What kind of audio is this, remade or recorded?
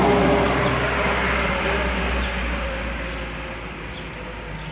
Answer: recorded